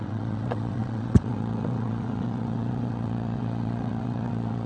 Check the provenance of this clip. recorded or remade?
remade